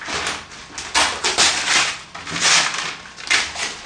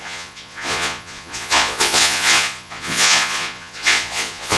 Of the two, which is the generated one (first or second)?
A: second